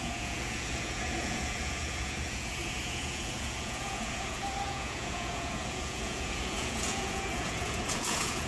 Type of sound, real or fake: fake